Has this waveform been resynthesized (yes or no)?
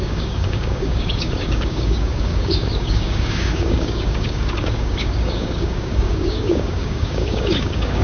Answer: yes